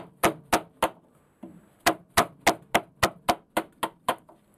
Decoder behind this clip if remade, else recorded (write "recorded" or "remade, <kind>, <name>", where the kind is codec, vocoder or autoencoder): recorded